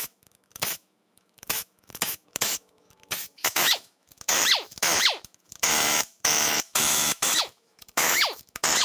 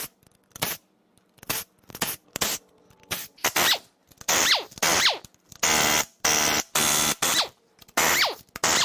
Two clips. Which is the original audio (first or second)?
second